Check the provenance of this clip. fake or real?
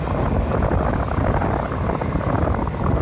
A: real